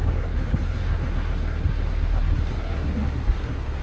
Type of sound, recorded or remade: remade